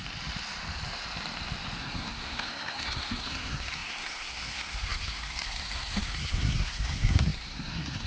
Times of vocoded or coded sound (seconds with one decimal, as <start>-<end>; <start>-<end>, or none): 1.8-8.1